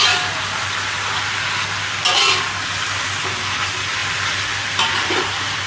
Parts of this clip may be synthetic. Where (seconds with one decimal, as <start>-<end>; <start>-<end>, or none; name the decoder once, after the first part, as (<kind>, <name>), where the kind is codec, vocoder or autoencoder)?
none